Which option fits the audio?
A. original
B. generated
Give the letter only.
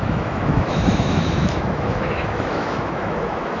B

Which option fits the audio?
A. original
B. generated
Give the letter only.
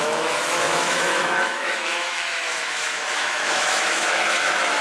B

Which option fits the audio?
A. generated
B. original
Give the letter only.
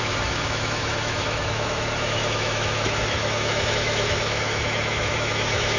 A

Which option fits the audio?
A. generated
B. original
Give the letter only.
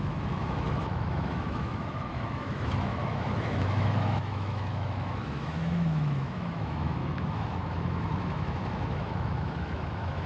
A